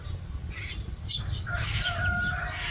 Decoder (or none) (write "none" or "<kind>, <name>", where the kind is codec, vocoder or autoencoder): none